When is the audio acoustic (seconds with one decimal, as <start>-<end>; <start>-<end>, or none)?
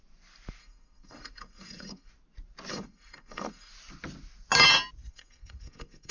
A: 0.0-0.6; 2.1-2.7; 3.7-5.0